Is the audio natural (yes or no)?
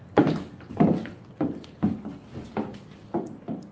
yes